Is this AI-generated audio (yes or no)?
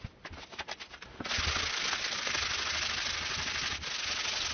no